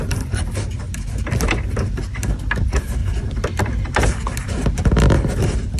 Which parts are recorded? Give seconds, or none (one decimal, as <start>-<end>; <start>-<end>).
0.0-3.0; 3.6-5.8